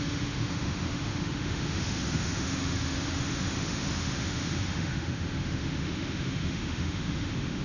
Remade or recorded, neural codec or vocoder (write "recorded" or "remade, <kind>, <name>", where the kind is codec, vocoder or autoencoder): remade, autoencoder, DAC-VAE